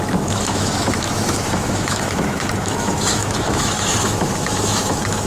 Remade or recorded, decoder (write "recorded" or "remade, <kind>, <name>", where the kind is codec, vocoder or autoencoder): remade, autoencoder, DAC-VAE